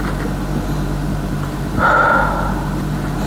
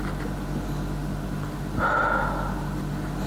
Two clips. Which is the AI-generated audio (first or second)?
first